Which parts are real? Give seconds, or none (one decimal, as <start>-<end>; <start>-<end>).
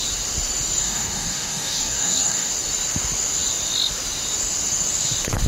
0.0-0.8; 2.5-5.5